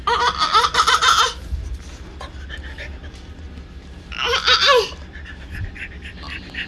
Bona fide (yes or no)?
yes